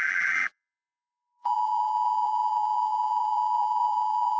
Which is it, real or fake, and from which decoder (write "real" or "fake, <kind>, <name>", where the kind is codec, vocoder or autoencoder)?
fake, vocoder, BigVGAN v2